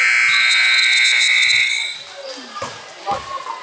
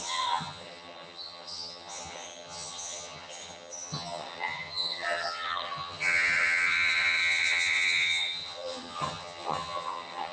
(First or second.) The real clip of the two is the first